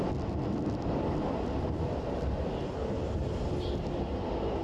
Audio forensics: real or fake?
real